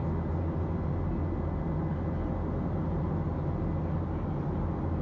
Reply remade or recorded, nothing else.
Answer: recorded